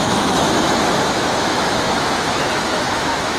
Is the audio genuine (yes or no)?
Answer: no